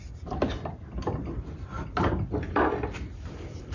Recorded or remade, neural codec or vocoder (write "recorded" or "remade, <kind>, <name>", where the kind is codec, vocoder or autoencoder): recorded